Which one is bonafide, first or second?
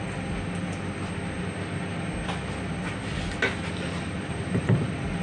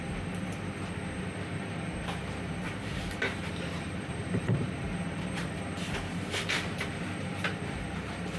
first